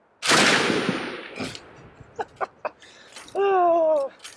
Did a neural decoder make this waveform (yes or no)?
no